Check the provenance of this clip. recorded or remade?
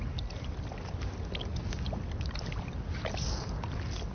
recorded